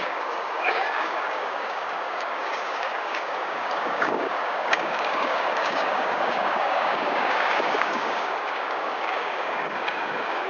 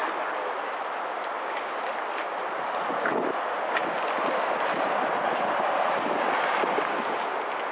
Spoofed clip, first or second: first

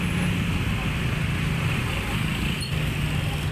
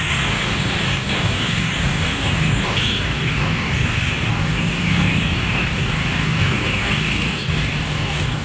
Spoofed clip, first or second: second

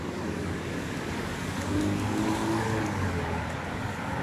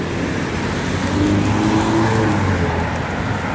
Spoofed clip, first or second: first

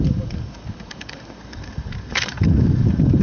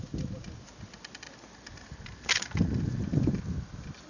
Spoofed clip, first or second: first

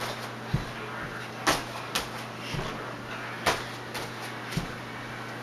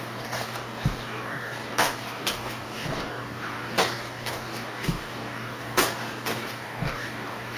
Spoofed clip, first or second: second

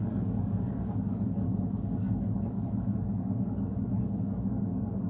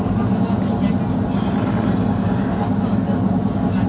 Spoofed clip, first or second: first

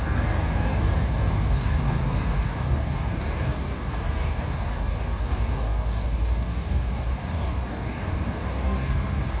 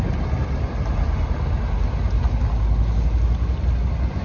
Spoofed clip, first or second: first